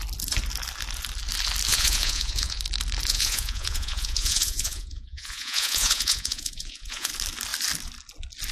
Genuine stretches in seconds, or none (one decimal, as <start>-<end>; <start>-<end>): 0.0-1.7; 2.6-3.1; 7.1-8.5